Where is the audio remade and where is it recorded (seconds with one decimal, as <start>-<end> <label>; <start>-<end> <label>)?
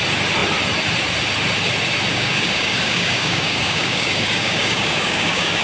0.0-2.1 recorded; 2.1-5.6 remade